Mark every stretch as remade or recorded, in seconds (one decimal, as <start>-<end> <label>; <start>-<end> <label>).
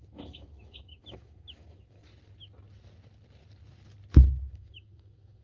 0.0-2.0 remade; 2.0-4.3 recorded; 4.3-5.4 remade